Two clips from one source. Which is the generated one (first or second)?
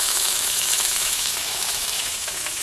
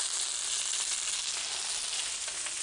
first